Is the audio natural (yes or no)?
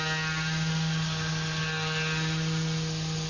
yes